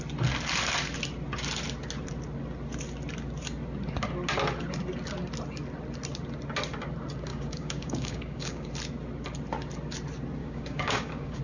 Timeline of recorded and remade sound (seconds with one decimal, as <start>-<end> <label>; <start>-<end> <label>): 0.0-7.3 recorded; 7.3-8.7 remade; 8.7-10.4 recorded; 10.4-11.4 remade